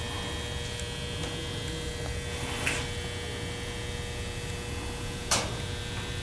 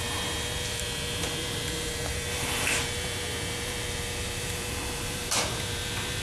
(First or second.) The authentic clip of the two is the first